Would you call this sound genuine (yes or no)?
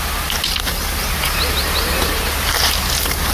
yes